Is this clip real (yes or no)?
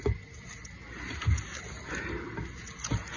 yes